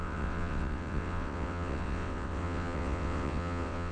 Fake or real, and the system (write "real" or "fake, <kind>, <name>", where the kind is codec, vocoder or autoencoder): fake, vocoder, WaveNeXt